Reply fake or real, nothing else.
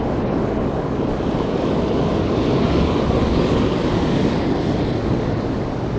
fake